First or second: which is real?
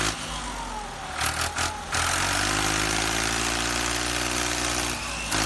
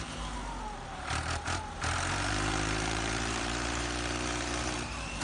first